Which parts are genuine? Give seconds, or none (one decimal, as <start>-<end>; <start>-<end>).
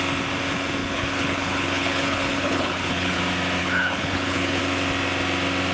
0.0-0.8; 3.2-3.6; 4.6-5.7